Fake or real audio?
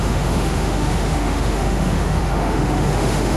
fake